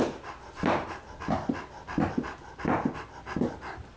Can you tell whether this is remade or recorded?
recorded